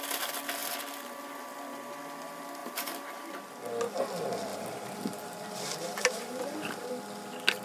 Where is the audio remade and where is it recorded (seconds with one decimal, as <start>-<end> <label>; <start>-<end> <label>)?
0.0-2.6 recorded; 2.6-3.3 remade; 3.3-4.5 recorded; 4.5-6.9 remade; 6.9-7.6 recorded